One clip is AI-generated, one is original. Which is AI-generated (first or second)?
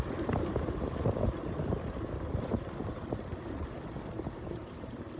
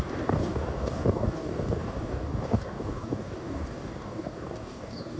second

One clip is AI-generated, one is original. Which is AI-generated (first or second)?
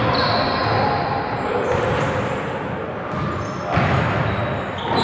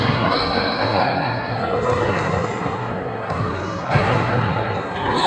second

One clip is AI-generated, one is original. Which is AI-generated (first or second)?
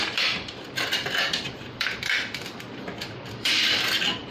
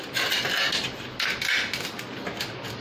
first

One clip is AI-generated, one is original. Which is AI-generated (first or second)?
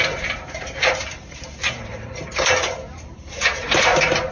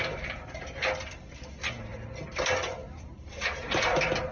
first